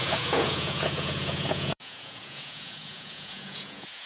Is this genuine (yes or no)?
no